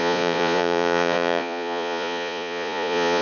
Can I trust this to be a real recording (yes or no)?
no